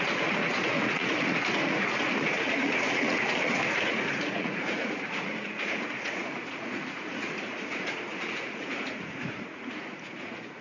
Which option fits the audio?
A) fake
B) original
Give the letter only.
A